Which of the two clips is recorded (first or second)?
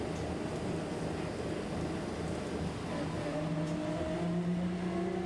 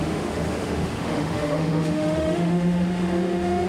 first